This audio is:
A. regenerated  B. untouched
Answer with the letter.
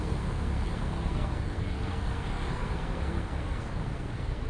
A